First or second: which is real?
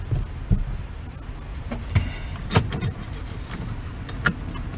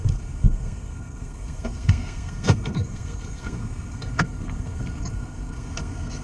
first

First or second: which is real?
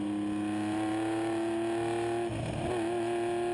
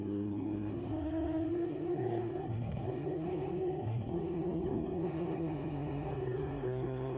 first